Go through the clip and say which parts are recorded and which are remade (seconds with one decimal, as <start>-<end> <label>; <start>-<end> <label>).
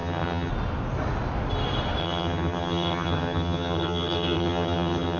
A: 0.0-0.5 remade; 0.5-2.0 recorded; 2.0-5.2 remade